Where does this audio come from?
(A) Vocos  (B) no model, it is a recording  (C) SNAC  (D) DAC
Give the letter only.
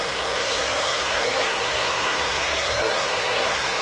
C